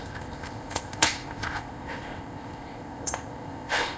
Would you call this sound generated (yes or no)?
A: yes